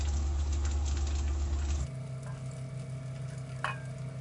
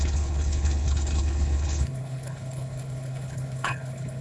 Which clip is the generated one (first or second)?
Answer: second